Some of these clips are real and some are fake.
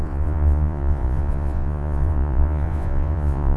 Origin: fake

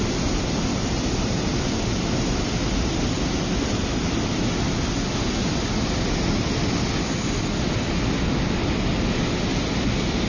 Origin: real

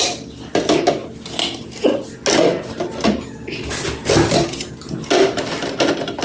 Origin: real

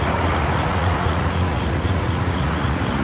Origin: fake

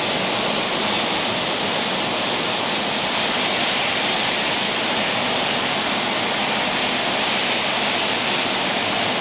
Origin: real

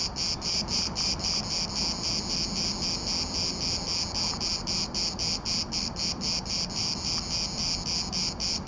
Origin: real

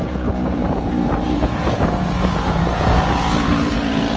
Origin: fake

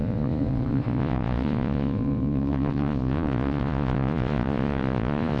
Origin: fake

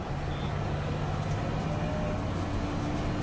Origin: real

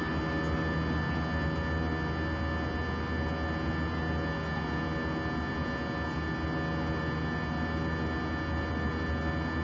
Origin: real